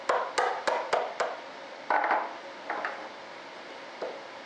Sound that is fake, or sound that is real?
real